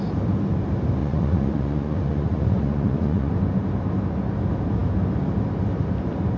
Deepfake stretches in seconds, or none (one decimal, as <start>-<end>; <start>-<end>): 1.0-3.3

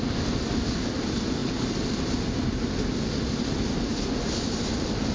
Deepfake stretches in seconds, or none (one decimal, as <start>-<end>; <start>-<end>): 0.0-1.4; 3.4-3.9

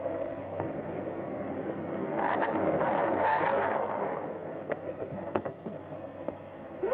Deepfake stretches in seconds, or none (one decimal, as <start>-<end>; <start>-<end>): 0.0-6.9

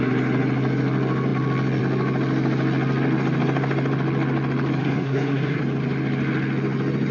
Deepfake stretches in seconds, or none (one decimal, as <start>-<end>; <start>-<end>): 4.8-5.6

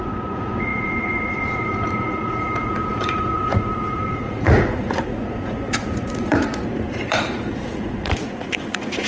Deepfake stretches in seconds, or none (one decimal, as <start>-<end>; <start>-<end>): 0.0-6.5; 7.1-9.1

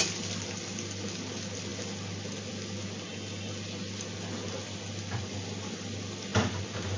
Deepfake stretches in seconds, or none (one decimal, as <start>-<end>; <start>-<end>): none

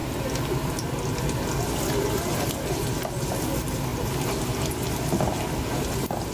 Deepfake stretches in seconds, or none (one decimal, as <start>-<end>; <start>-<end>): 3.9-4.7

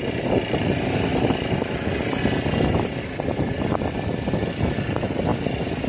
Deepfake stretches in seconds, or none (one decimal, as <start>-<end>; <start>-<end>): none